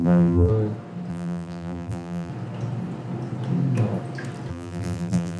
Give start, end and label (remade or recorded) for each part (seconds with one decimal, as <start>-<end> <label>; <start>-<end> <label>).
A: 0.0-0.5 remade; 0.5-1.1 recorded; 1.1-2.3 remade; 2.3-4.5 recorded; 4.5-5.4 remade

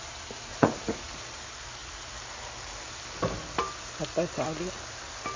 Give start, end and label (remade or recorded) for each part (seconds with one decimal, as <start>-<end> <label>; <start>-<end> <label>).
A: 0.0-0.5 recorded; 0.5-1.1 remade; 1.1-5.4 recorded

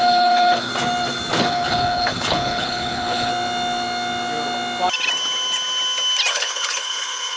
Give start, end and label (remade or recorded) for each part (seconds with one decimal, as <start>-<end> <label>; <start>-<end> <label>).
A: 0.0-0.7 remade; 0.7-1.4 recorded; 1.4-3.3 remade; 3.3-6.3 recorded; 6.3-7.4 remade

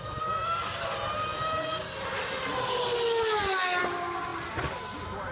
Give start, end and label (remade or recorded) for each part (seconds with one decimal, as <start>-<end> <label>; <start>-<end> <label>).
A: 0.0-5.3 recorded

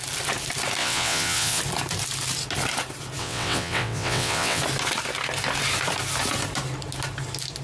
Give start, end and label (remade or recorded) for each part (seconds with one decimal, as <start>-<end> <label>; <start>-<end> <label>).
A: 0.0-0.8 recorded; 0.8-1.6 remade; 1.6-3.2 recorded; 3.2-4.6 remade; 4.6-7.6 recorded